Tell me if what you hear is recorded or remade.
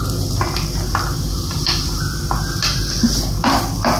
recorded